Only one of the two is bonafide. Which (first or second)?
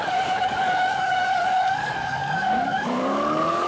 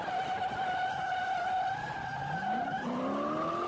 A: second